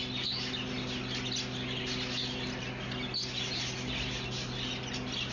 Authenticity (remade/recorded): recorded